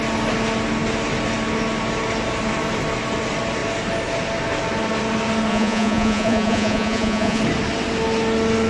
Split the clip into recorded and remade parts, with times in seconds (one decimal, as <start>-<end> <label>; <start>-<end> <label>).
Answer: 0.0-5.5 recorded; 5.5-7.4 remade; 7.4-8.7 recorded